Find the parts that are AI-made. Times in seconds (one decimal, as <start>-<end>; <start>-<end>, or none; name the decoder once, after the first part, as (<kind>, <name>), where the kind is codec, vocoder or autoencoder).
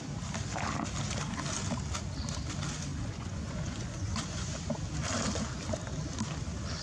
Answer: 2.9-4.5 (vocoder, Vocos)